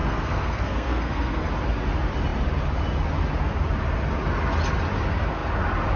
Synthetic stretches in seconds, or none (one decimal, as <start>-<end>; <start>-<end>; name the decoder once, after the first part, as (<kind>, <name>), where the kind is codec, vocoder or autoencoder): 0.0-1.5 (codec, SNAC)